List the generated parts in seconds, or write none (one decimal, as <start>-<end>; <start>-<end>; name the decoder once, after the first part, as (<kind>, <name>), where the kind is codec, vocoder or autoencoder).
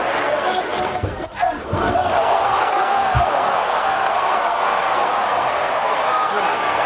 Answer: 0.0-6.9 (codec, SNAC)